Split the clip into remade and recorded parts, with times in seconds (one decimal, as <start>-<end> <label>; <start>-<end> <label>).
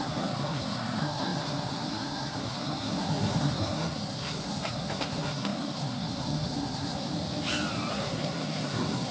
0.0-7.1 remade; 7.1-7.9 recorded; 7.9-9.1 remade